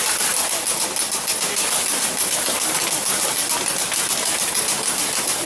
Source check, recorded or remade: recorded